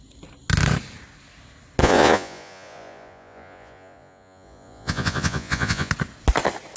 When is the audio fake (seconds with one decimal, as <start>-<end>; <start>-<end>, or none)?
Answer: 1.8-5.9